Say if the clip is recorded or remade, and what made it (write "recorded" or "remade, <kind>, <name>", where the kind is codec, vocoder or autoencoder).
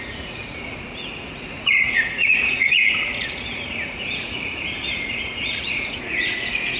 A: remade, vocoder, Vocos